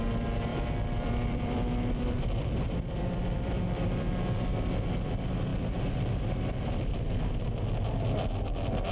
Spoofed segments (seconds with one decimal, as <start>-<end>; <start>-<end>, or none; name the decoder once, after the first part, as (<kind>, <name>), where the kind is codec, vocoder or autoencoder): 0.5-4.1 (vocoder, BigVGAN v2); 5.5-7.4